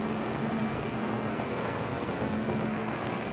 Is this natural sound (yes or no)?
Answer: no